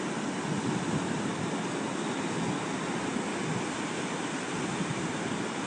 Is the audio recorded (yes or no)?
yes